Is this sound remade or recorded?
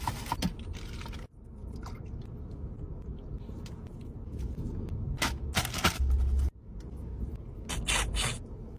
recorded